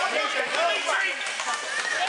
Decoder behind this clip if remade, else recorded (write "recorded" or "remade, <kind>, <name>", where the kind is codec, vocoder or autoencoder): recorded